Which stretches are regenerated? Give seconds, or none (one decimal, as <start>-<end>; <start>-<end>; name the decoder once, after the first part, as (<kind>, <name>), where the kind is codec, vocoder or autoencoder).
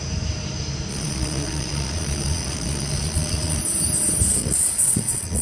0.9-3.6 (vocoder, Vocos); 4.4-5.4